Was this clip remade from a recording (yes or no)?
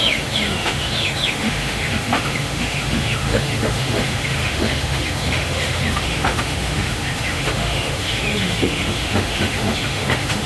yes